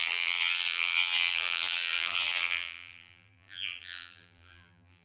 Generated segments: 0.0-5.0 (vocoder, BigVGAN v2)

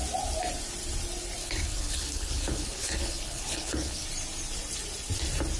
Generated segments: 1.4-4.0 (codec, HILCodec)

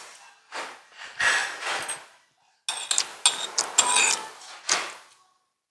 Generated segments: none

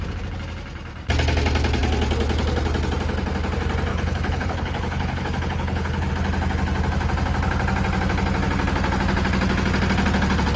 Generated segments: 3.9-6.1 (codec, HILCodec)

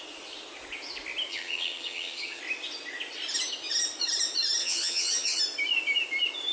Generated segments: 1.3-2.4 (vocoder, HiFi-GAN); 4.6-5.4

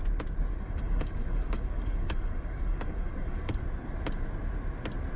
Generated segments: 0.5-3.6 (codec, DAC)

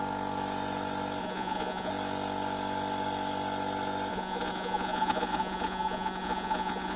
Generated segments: 1.2-1.9 (vocoder, Vocos); 4.1-7.0

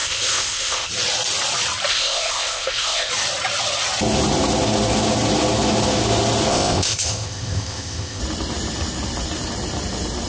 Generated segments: 0.0-0.9 (codec, ZipCodec); 1.9-3.1; 6.5-8.2